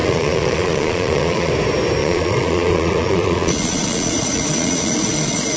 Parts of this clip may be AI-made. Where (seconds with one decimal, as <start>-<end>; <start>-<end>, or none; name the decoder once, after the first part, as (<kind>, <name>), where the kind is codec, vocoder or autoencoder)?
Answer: 0.0-1.5 (vocoder, Vocos); 2.0-5.6